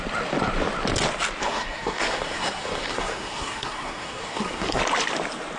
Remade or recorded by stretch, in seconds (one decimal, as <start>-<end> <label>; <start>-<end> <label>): 0.0-1.4 recorded; 1.4-4.8 remade; 4.8-5.6 recorded